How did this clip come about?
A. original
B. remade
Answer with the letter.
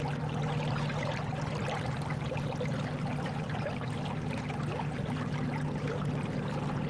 A